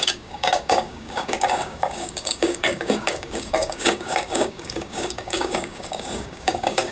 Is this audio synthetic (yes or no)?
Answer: yes